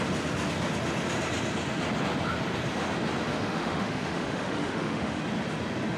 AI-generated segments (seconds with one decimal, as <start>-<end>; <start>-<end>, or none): 3.3-5.2